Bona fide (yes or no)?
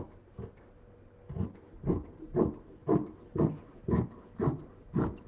yes